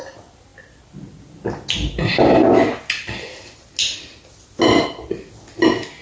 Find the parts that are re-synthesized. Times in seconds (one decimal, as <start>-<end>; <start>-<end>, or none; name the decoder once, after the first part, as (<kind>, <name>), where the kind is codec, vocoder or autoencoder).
none